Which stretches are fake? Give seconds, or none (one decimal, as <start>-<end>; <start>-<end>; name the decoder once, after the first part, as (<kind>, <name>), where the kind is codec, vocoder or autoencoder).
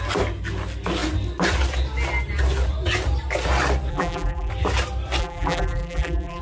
3.9-4.5 (vocoder, BigVGAN v2); 5.2-6.4